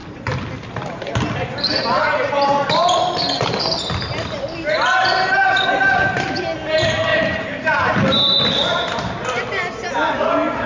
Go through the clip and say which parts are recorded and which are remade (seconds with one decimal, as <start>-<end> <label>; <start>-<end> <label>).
0.0-7.1 recorded; 7.1-8.5 remade; 8.5-10.7 recorded